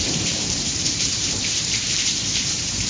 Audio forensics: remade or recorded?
remade